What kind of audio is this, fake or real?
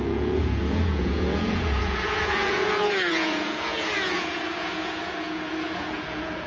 fake